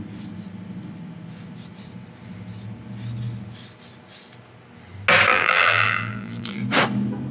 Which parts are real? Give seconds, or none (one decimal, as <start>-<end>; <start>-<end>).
0.0-5.3; 6.6-7.3